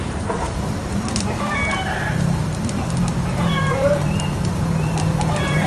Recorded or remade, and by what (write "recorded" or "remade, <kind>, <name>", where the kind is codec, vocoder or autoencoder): remade, vocoder, BigVGAN v2